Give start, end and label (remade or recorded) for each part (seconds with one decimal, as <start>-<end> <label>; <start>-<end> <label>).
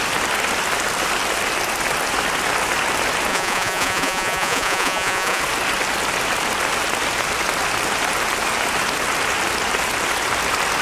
0.0-3.3 recorded; 3.3-5.4 remade; 5.4-10.8 recorded